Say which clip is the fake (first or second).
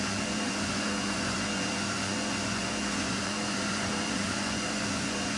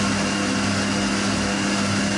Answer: first